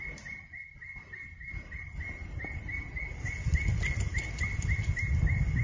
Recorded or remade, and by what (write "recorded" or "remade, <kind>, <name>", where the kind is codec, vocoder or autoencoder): recorded